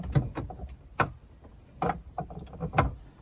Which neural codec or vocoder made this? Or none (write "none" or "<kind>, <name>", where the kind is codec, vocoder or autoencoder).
none